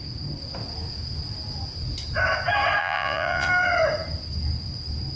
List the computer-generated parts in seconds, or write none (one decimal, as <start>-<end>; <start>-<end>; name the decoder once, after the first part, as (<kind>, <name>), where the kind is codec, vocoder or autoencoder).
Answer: 2.8-3.5 (vocoder, Vocos)